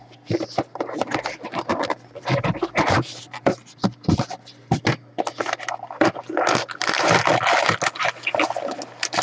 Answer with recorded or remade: recorded